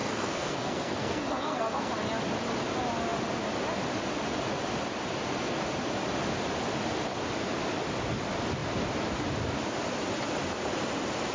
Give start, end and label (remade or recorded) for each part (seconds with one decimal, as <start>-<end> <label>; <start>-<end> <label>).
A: 0.0-1.9 remade; 1.9-11.3 recorded